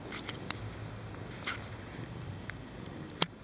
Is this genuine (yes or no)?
yes